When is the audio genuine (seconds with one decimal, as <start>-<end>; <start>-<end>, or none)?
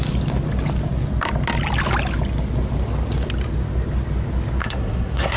0.0-4.6